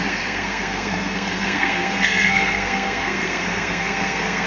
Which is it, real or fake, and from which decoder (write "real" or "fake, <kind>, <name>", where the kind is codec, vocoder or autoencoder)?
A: fake, codec, SNAC